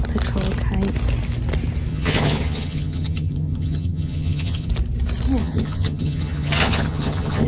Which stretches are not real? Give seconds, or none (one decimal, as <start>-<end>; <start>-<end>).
1.9-4.7; 5.4-7.5

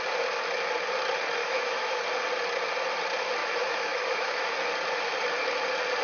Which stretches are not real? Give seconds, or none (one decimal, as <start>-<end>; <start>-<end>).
1.4-2.0; 3.4-4.5

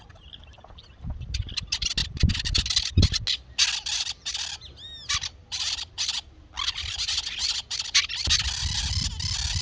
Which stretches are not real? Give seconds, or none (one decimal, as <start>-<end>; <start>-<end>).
none

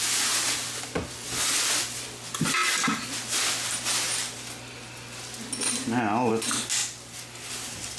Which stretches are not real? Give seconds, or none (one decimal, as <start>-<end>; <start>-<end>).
none

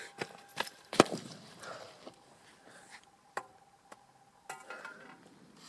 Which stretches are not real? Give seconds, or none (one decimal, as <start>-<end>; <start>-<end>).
0.5-2.1

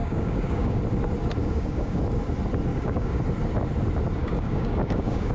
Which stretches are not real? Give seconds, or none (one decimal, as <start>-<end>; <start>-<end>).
0.0-0.8; 1.4-2.0; 2.7-3.2; 4.2-5.3